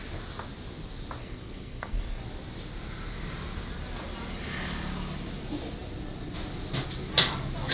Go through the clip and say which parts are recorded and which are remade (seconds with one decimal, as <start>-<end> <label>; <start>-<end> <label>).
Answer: 0.0-1.2 recorded; 1.2-2.2 remade; 2.2-7.7 recorded